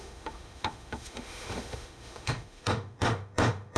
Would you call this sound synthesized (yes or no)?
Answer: yes